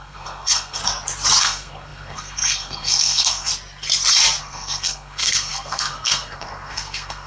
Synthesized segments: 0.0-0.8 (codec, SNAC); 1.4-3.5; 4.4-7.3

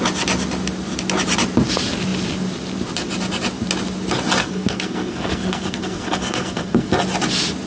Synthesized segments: 4.4-6.9 (codec, SNAC)

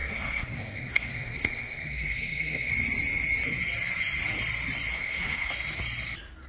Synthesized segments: 0.0-2.7 (codec, SNAC); 4.9-5.5

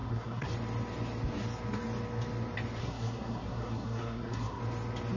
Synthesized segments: 0.0-0.5 (codec, SNAC); 2.8-4.6

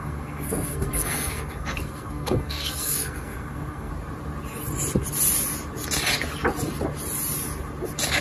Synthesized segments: 0.0-3.9 (codec, SNAC)

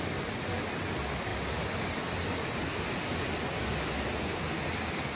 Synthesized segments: none

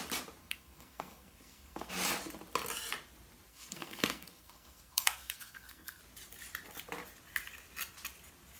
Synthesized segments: 0.4-1.9 (codec, SNAC); 3.5-6.0